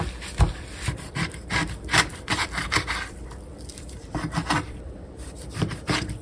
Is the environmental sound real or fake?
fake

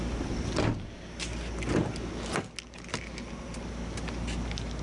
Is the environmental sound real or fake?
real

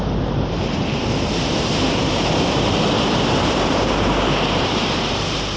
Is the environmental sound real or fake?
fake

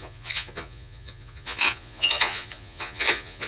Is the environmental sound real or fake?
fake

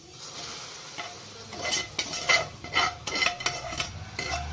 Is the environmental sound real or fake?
real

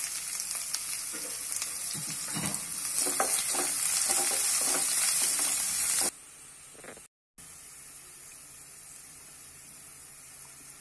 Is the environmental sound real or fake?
real